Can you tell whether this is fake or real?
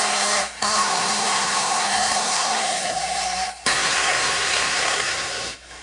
fake